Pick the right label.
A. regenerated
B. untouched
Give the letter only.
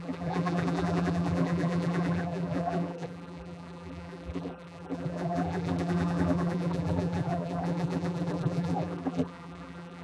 A